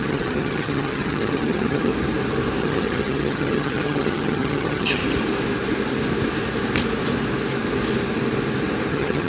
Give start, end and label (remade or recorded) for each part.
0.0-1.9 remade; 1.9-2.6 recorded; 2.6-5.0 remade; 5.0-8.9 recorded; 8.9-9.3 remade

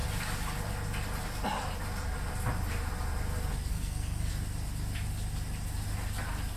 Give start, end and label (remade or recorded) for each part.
0.0-3.7 recorded; 3.7-4.3 remade; 4.3-6.6 recorded

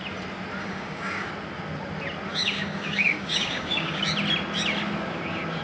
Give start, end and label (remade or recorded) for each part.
0.0-0.6 recorded; 0.6-1.3 remade; 1.3-2.3 recorded; 2.3-4.0 remade; 4.0-5.6 recorded